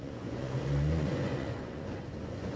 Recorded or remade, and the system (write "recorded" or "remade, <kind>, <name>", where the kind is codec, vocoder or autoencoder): remade, vocoder, Vocos